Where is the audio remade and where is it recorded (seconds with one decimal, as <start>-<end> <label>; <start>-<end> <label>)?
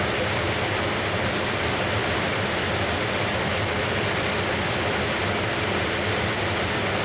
0.0-7.0 recorded